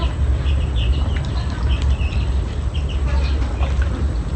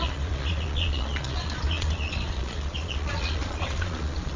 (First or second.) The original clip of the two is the first